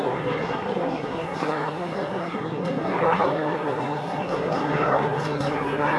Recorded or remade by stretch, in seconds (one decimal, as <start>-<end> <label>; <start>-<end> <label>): 0.0-6.0 remade